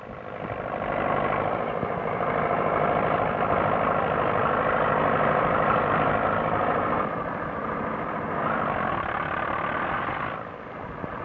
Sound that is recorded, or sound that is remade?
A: recorded